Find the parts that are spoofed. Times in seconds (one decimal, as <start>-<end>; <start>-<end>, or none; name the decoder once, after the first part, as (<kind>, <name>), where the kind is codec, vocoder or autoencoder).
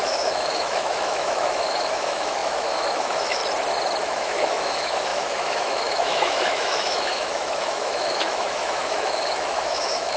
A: 0.0-3.4 (autoencoder, DAC-VAE); 4.0-10.2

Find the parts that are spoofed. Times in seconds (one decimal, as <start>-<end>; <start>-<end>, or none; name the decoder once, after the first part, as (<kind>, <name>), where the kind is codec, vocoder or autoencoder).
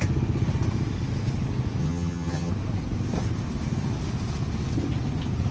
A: 1.8-2.5 (vocoder, HiFi-GAN)